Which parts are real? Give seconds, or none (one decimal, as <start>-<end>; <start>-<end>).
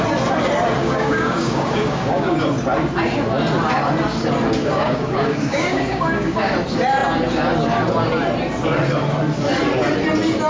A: 0.0-0.8; 2.4-4.6; 6.5-10.5